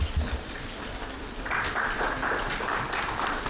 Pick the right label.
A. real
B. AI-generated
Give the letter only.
B